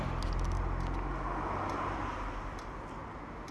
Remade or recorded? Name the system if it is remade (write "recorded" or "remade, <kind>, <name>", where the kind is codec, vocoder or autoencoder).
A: recorded